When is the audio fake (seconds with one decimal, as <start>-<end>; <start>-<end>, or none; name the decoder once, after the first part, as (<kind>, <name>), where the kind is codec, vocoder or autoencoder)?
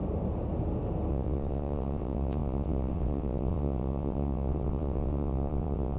1.1-6.0 (vocoder, WaveNeXt)